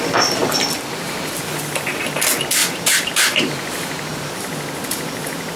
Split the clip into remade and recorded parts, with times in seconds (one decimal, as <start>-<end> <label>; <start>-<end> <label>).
0.0-2.6 recorded; 2.6-4.3 remade; 4.3-5.6 recorded